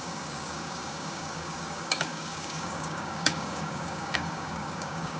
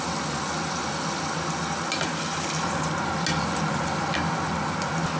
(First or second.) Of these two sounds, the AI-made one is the first